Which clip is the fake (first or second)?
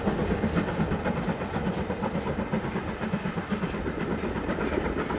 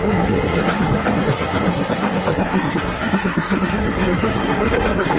second